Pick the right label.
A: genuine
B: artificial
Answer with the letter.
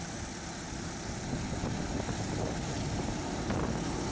A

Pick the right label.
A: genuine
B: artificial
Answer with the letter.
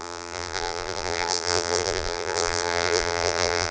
B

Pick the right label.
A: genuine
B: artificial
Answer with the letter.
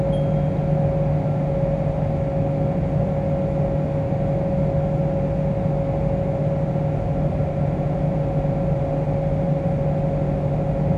A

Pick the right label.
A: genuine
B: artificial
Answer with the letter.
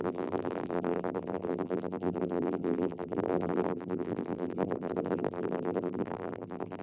B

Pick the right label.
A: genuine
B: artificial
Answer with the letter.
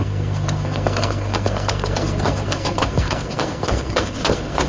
B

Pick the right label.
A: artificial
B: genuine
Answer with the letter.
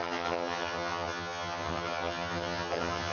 A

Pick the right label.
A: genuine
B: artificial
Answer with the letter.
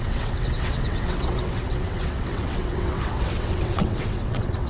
B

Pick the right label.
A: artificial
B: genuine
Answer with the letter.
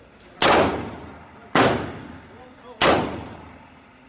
B